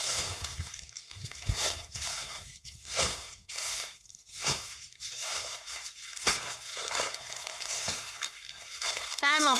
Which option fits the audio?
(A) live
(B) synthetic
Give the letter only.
B